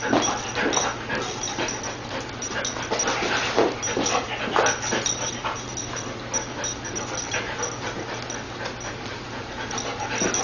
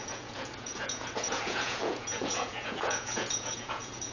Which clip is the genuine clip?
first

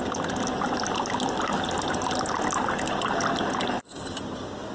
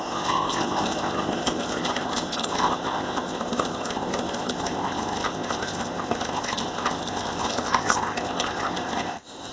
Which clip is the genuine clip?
first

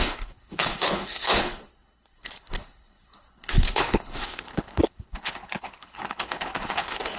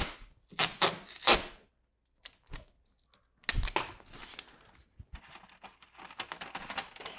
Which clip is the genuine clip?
second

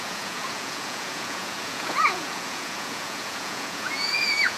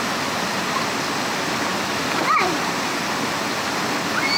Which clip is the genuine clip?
second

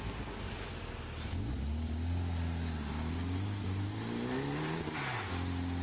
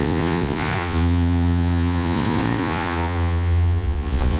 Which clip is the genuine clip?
first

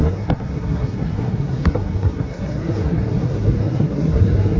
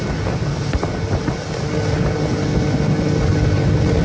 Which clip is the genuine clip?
second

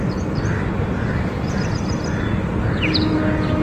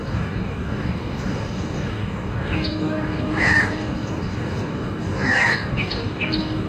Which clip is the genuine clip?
first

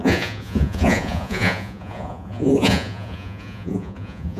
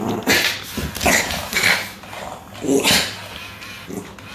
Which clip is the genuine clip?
second